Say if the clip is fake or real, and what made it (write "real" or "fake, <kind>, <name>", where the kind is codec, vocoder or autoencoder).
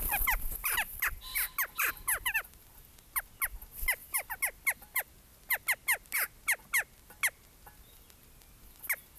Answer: real